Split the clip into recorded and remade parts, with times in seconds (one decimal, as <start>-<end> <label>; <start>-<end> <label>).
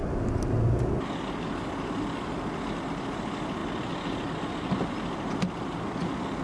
0.0-6.4 recorded